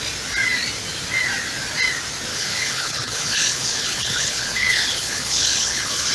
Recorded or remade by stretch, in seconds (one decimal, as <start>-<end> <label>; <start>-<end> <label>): 0.0-2.3 recorded; 2.3-6.1 remade